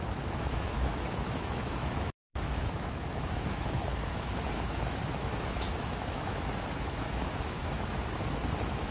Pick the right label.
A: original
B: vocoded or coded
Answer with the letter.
B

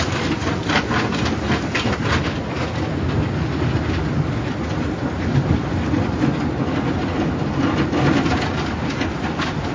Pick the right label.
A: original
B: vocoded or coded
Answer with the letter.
A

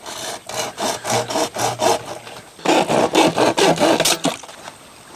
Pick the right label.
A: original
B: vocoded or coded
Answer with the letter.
A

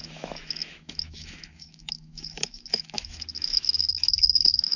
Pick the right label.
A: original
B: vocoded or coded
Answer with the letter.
B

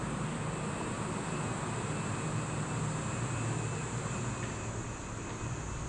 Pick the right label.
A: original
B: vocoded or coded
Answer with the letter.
A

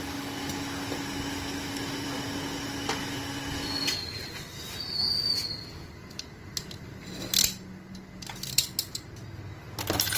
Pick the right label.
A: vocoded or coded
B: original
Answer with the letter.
B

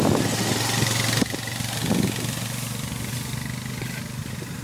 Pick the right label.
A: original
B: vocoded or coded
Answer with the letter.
A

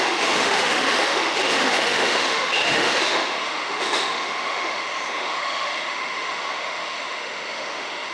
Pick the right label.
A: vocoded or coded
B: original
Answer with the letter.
A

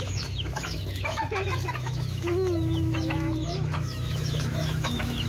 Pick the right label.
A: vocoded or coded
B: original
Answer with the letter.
A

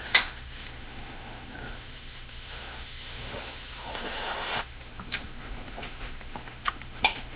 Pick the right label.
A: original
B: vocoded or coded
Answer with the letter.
B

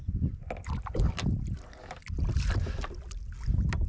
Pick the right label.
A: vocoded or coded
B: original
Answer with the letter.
B